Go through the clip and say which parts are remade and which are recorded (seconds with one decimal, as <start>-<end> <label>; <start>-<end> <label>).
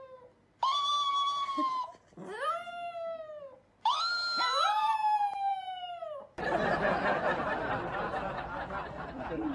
0.0-5.5 recorded; 5.5-7.7 remade; 7.7-8.8 recorded; 8.8-9.5 remade